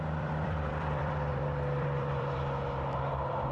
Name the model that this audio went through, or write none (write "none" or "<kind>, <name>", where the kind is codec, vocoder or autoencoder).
vocoder, BigVGAN v2